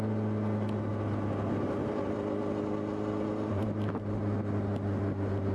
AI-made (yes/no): no